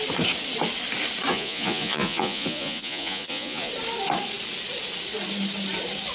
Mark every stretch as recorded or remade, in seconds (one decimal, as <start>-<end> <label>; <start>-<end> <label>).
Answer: 0.0-1.3 recorded; 1.3-3.7 remade; 3.7-6.1 recorded